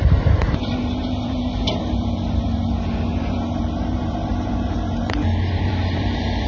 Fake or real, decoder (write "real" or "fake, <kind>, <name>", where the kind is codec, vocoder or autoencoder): fake, vocoder, BigVGAN v2